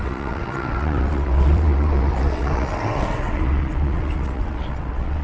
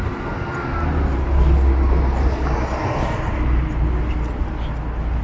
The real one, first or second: second